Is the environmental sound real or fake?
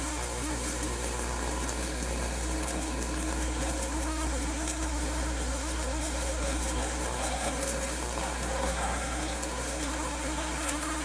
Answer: fake